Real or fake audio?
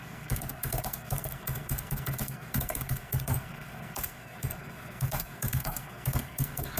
fake